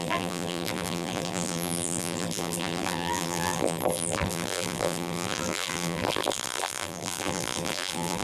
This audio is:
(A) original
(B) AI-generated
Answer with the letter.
B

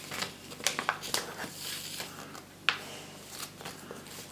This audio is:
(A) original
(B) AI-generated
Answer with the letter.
A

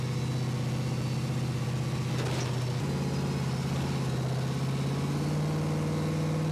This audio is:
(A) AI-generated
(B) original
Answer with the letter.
B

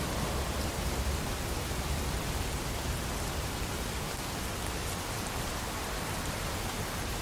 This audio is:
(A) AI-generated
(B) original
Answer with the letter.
A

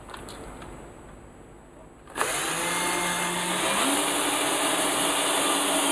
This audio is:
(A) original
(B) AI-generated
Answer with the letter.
A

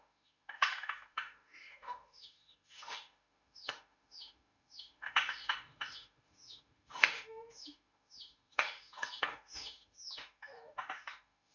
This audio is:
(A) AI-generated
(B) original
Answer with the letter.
A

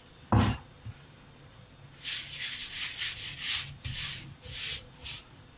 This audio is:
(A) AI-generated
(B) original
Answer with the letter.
B